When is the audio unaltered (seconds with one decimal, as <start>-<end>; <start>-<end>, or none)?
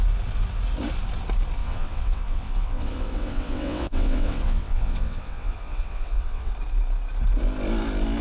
0.0-1.6; 6.5-8.2